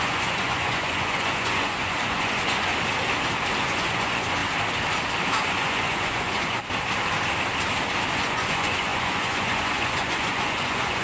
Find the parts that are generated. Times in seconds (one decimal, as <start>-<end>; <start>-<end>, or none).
0.0-2.7; 3.6-4.4; 5.4-6.6; 8.1-11.0